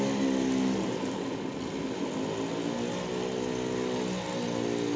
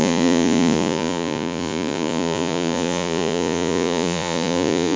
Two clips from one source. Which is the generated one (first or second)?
second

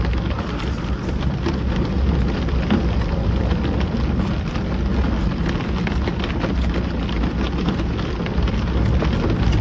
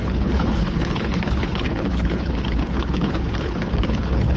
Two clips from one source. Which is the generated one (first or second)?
second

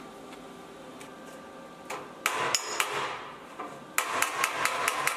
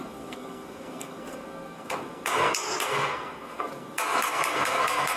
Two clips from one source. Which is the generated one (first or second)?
second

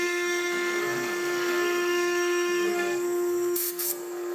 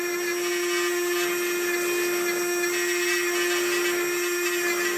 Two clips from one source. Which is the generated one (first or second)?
first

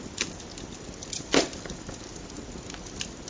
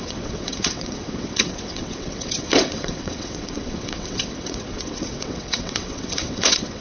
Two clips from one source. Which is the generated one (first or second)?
second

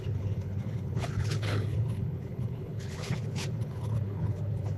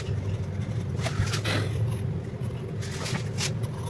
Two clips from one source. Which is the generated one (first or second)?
first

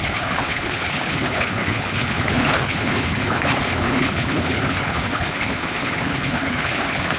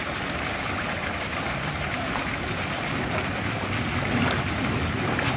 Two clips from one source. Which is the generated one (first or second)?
first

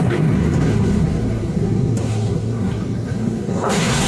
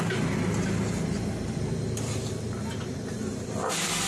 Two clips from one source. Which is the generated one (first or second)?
first